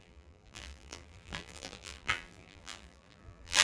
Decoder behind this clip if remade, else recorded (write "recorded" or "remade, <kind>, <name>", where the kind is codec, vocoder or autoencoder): remade, vocoder, BigVGAN v2